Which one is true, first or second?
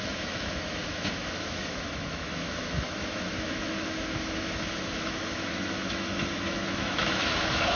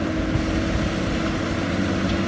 second